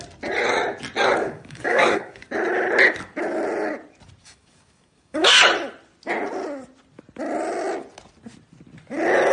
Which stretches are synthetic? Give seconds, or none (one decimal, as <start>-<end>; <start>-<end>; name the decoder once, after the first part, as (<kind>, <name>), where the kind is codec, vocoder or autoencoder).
1.2-2.3 (codec, DAC); 4.2-5.4